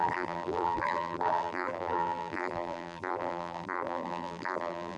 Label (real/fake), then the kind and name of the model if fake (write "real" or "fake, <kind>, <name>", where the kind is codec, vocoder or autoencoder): fake, vocoder, BigVGAN v2